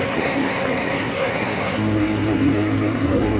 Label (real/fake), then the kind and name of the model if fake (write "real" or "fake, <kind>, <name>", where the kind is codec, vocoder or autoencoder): fake, codec, SNAC